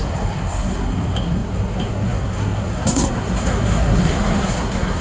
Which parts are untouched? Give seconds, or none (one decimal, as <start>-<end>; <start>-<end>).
none